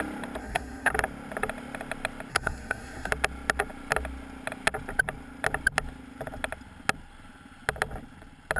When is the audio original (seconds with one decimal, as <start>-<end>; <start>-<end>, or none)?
0.0-0.4; 0.9-2.3; 3.1-8.6